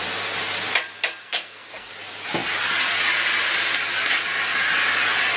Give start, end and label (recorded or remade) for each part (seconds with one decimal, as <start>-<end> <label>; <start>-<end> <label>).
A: 0.0-1.2 recorded; 1.2-1.9 remade; 1.9-5.4 recorded